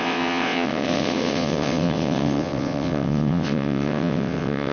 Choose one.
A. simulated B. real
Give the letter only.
A